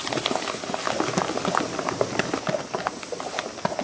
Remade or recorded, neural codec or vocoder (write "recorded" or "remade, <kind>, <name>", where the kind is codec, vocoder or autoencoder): recorded